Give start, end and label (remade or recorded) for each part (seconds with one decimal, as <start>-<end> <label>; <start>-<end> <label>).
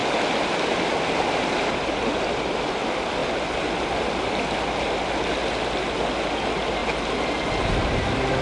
0.0-8.4 recorded